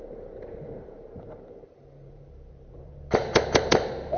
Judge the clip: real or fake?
fake